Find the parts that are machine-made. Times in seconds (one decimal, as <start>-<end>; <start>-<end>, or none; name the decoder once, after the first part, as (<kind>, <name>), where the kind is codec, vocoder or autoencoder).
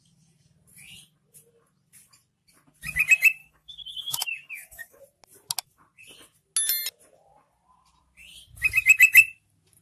3.4-5.0 (codec, DAC)